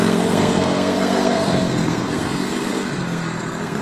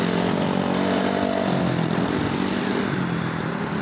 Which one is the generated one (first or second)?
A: first